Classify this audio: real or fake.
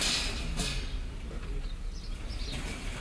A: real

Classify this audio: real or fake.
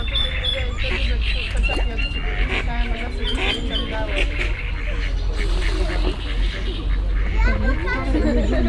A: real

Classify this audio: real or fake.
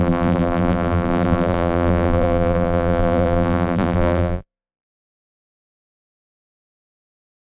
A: fake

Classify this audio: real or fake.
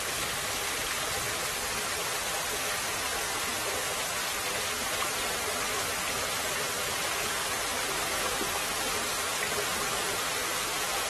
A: real